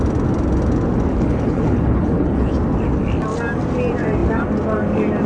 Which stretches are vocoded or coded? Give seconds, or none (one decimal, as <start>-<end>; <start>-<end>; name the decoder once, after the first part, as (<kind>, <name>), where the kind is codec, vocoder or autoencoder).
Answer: 1.1-2.5 (codec, HILCodec)